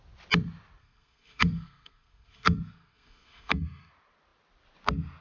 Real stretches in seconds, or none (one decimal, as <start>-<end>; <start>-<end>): 0.0-0.8; 3.9-5.2